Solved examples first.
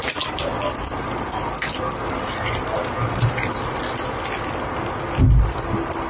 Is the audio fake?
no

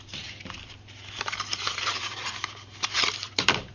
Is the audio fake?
yes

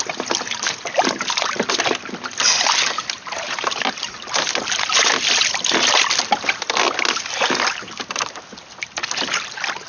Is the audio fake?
no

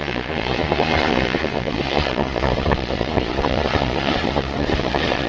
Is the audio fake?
yes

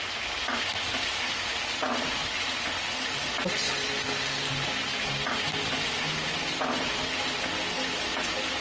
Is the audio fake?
no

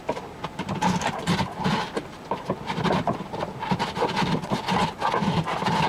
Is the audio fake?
no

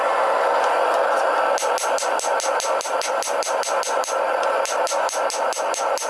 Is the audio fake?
no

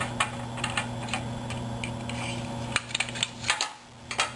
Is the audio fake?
no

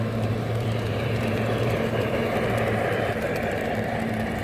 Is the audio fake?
yes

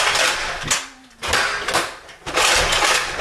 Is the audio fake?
no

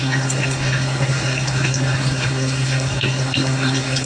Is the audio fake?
yes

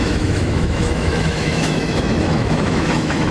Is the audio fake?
yes